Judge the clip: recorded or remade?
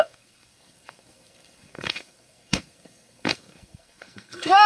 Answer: remade